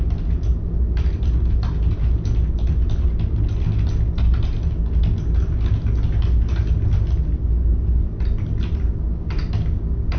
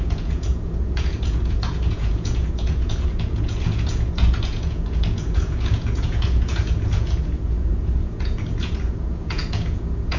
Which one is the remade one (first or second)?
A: second